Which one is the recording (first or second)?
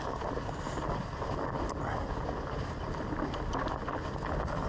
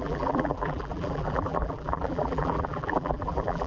first